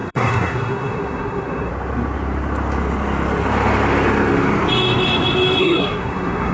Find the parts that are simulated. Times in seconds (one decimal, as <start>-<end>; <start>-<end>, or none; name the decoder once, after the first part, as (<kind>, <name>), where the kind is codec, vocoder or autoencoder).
0.0-1.7 (codec, SNAC); 5.6-6.5